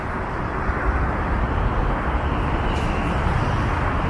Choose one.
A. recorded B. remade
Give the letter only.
A